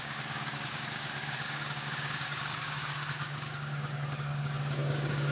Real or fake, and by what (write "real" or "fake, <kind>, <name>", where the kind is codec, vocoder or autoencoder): fake, codec, DAC